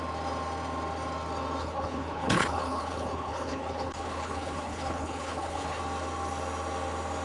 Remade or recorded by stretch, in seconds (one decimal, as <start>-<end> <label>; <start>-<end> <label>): 0.0-1.6 recorded; 1.6-5.8 remade; 5.8-7.2 recorded